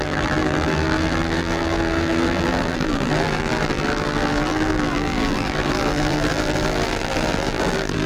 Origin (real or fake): fake